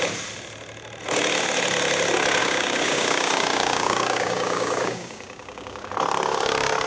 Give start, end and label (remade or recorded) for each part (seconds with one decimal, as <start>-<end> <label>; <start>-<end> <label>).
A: 0.0-2.4 recorded; 2.4-5.9 remade; 5.9-6.9 recorded